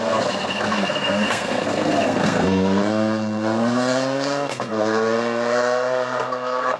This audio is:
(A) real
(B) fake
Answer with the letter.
B